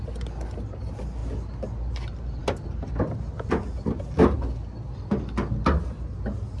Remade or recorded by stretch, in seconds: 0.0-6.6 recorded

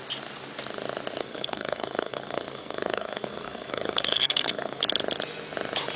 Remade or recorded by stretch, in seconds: 0.0-1.2 recorded; 1.2-4.8 remade; 4.8-6.0 recorded

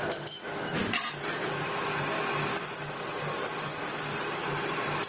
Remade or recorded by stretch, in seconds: 0.0-5.1 recorded

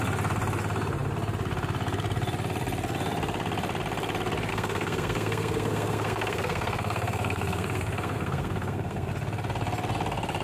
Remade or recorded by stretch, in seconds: 0.0-4.5 recorded; 4.5-9.1 remade; 9.1-10.4 recorded

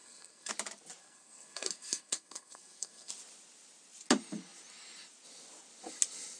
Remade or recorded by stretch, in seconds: 0.0-0.5 remade; 0.5-1.0 recorded; 1.0-3.1 remade; 3.1-6.4 recorded

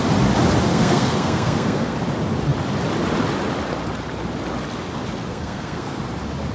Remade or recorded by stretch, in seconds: 0.0-0.7 recorded; 0.7-2.0 remade; 2.0-5.3 recorded; 5.3-6.0 remade; 6.0-6.5 recorded

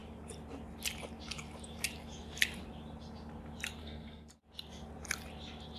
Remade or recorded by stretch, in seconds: 0.0-3.8 recorded; 3.8-4.3 remade; 4.3-5.8 recorded

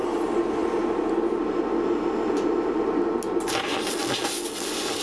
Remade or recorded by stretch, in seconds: 0.0-5.0 recorded